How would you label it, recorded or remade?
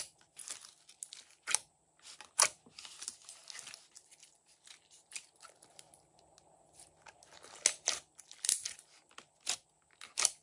recorded